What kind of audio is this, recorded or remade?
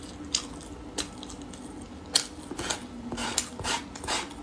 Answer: recorded